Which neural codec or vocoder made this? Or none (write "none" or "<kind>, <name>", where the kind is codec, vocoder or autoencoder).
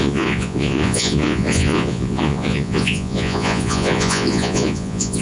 vocoder, Vocos